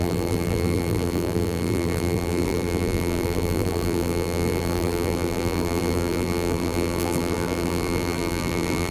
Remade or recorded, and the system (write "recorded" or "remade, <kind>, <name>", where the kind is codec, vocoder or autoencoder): remade, vocoder, BigVGAN v2